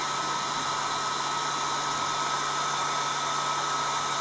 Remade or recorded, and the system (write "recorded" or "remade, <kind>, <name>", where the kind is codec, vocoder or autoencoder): recorded